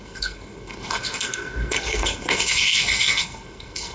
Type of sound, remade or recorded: remade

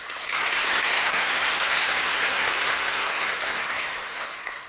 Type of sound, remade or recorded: remade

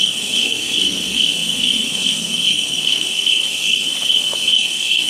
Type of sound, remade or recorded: remade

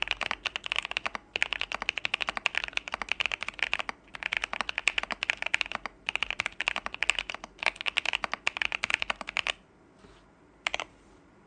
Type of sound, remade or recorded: recorded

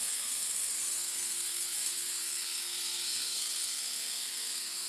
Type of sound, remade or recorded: remade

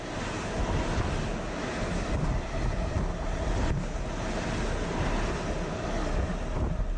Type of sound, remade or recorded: recorded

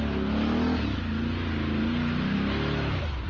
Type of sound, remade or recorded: recorded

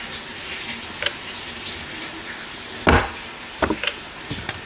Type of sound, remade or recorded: recorded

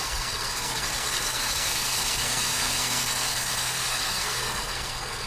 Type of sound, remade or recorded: remade